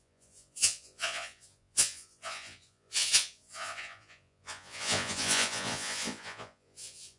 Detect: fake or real fake